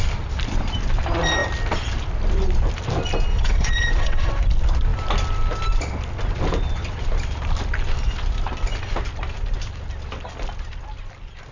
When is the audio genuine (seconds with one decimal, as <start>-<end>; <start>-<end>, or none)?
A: 0.0-3.3; 4.3-11.5